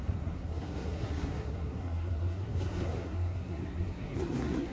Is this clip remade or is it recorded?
remade